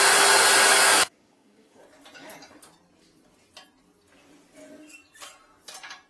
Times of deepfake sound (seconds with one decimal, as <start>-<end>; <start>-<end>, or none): 0.8-1.8